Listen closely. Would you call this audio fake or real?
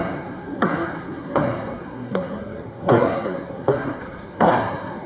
fake